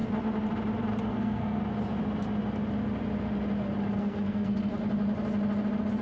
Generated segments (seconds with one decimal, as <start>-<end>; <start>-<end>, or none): 1.0-1.6; 4.0-4.7